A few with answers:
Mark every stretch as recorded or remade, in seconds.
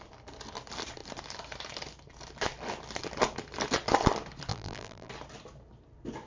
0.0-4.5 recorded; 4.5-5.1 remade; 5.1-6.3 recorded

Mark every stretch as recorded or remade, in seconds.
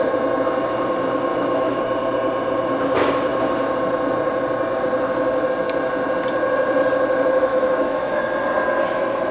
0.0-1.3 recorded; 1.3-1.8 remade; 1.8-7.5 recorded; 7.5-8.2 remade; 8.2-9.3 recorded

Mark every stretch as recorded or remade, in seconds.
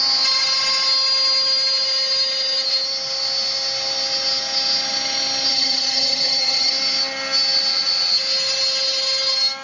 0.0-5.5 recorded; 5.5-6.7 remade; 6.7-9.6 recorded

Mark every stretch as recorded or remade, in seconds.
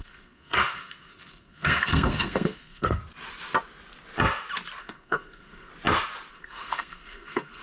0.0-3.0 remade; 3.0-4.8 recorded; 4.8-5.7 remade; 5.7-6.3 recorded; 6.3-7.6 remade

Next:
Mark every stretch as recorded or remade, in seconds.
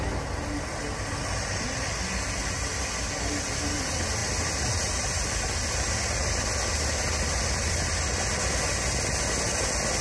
0.0-10.0 recorded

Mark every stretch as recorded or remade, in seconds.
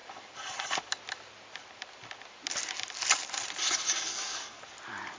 0.0-4.0 recorded; 4.0-4.6 remade; 4.6-5.2 recorded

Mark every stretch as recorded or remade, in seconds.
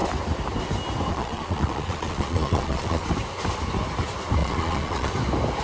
0.0-1.1 recorded; 1.1-3.0 remade; 3.0-4.4 recorded; 4.4-5.1 remade; 5.1-5.6 recorded